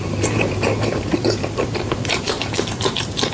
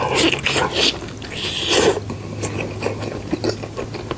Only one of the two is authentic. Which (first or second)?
second